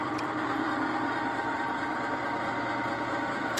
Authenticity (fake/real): fake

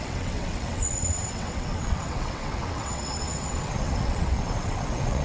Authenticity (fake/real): fake